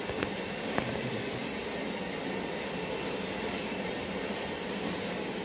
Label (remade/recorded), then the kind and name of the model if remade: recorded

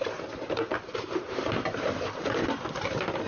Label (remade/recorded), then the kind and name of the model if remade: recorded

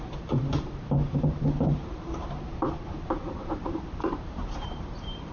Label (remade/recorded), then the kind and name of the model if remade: remade, vocoder, BigVGAN v2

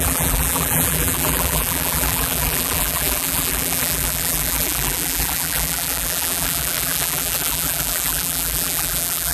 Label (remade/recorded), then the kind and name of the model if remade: remade, vocoder, BigVGAN v2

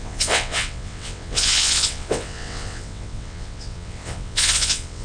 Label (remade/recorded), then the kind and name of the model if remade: remade, vocoder, WaveNeXt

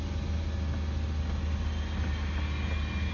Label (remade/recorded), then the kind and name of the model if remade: recorded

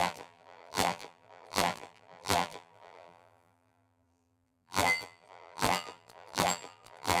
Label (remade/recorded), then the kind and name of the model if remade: remade, vocoder, BigVGAN v2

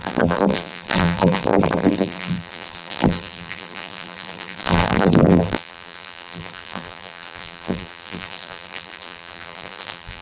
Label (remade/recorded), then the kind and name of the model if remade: remade, vocoder, BigVGAN v2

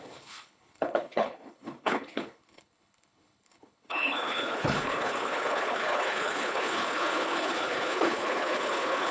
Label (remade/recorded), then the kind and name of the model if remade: remade, codec, HILCodec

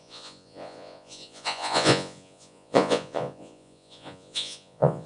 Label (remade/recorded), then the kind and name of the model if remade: remade, vocoder, Vocos